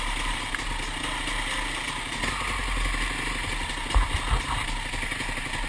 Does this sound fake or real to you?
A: real